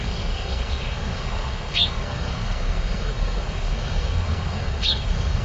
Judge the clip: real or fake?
fake